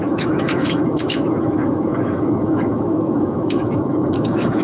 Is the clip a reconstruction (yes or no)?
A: yes